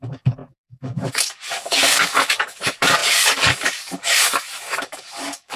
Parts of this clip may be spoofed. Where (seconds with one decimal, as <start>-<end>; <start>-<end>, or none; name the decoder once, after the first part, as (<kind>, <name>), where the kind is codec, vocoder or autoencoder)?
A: 0.0-5.6 (codec, DAC)